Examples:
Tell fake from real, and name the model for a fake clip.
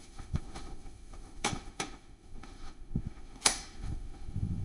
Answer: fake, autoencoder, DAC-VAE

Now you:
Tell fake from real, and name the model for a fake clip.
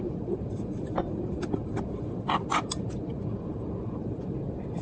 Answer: real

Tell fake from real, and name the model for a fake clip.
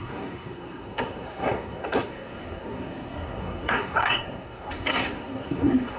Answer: fake, codec, SNAC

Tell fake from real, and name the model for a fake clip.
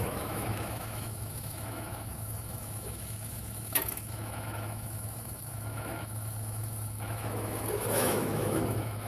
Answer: fake, autoencoder, DAC-VAE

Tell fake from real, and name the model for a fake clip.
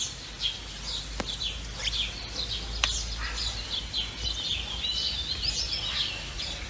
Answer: real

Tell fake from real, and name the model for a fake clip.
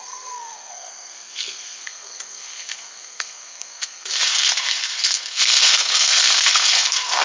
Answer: fake, codec, SNAC